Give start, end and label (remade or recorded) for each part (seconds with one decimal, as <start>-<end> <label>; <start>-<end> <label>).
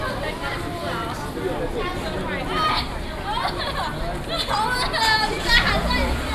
0.0-1.9 remade; 1.9-5.2 recorded; 5.2-6.3 remade